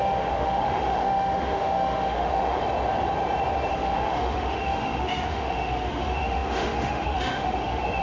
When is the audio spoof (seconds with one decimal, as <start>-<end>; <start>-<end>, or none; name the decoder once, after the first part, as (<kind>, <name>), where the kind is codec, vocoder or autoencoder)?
0.0-2.6 (autoencoder, DAC-VAE); 3.7-8.0